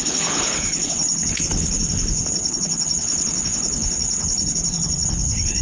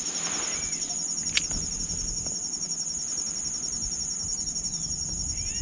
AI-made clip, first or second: first